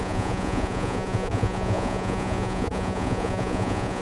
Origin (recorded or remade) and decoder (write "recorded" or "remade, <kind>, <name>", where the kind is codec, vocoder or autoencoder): remade, vocoder, Vocos